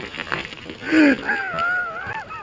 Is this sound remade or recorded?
recorded